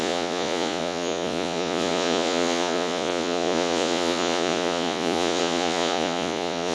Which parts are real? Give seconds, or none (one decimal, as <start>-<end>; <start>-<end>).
none